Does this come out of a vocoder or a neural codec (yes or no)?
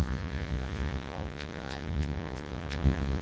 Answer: yes